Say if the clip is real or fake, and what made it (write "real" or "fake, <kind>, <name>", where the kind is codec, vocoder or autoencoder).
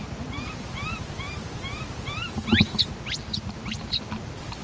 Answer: real